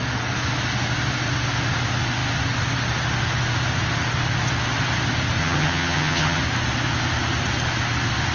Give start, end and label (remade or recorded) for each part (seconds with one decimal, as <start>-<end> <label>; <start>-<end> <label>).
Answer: 0.0-5.4 recorded; 5.4-6.4 remade; 6.4-8.3 recorded